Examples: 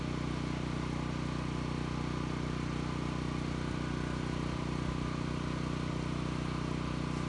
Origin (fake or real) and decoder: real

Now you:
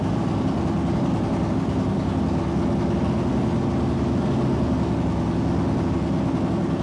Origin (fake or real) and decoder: real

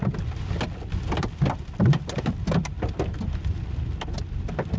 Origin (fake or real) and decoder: real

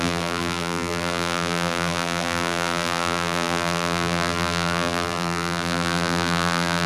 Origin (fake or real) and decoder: fake, vocoder, BigVGAN v2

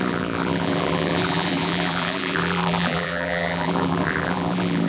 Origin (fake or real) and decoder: fake, vocoder, BigVGAN v2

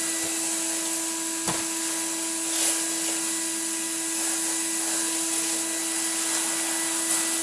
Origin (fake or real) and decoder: real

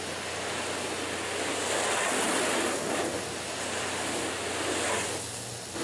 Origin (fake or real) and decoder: real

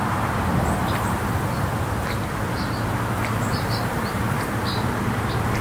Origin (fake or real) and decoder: fake, vocoder, BigVGAN v2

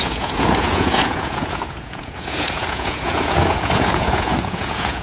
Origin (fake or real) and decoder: fake, vocoder, Vocos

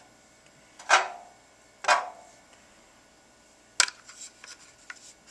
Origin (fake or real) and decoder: real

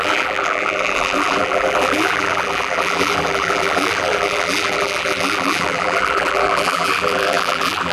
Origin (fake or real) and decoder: fake, vocoder, BigVGAN v2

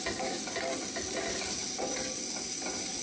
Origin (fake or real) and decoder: real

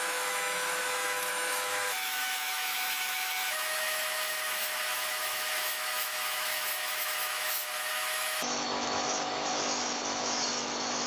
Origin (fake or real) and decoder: fake, autoencoder, DAC-VAE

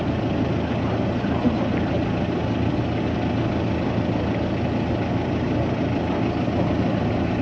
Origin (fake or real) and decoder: real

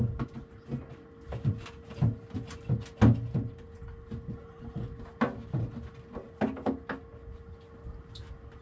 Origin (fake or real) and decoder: real